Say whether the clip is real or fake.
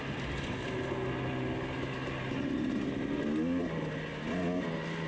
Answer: real